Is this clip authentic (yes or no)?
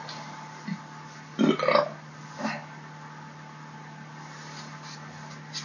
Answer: yes